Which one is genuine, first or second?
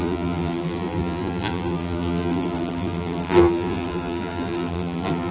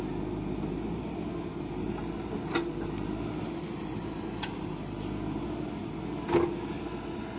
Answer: second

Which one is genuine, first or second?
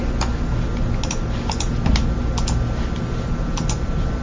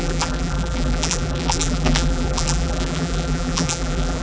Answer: first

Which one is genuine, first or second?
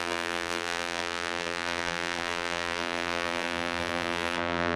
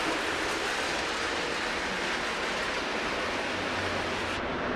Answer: second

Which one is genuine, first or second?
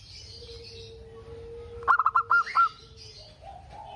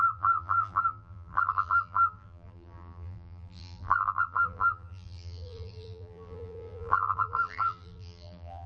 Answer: first